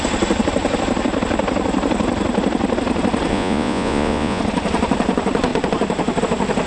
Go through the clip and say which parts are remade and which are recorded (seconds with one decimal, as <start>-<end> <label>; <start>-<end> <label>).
0.0-3.3 recorded; 3.3-4.4 remade; 4.4-6.7 recorded